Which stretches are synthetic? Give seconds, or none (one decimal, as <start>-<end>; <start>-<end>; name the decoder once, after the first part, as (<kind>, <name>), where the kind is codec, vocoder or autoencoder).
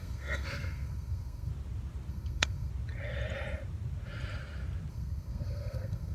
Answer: 0.0-1.5 (codec, SNAC); 2.1-2.7; 4.9-6.1